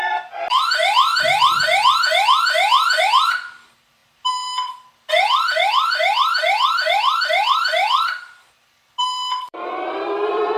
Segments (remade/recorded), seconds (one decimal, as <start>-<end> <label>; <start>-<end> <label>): 0.0-1.1 remade; 1.1-3.0 recorded; 3.0-10.6 remade